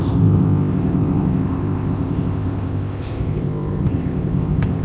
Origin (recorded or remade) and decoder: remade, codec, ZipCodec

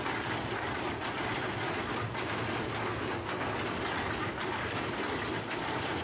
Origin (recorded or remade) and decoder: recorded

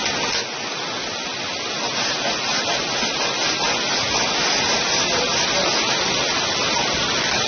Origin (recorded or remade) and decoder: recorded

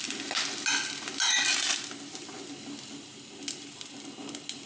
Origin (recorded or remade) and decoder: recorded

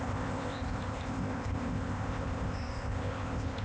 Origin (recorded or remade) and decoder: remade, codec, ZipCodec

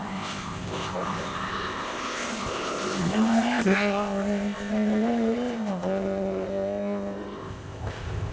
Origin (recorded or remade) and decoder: remade, codec, ZipCodec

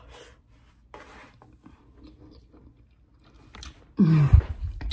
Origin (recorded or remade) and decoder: recorded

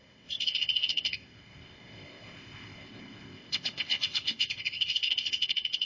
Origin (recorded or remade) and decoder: remade, codec, ZipCodec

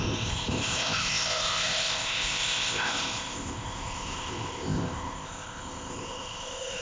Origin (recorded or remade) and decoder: remade, codec, ZipCodec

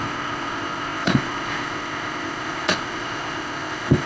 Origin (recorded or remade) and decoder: remade, codec, ZipCodec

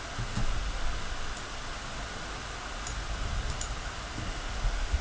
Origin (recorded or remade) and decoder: recorded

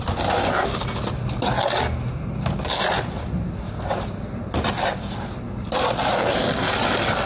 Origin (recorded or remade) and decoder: recorded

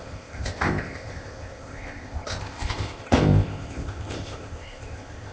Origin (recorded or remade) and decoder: remade, codec, ZipCodec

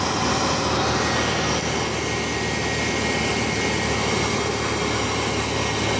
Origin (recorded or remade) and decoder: recorded